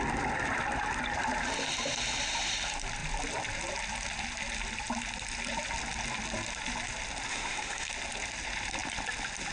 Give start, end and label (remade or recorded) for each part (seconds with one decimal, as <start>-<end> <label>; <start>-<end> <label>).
0.0-7.3 recorded; 7.3-7.9 remade; 7.9-9.5 recorded